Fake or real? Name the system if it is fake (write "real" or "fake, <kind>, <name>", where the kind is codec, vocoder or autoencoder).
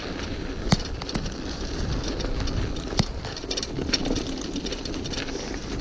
real